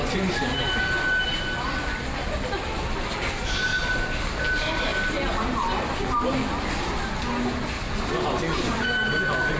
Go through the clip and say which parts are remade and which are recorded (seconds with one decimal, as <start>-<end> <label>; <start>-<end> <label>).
0.0-9.6 recorded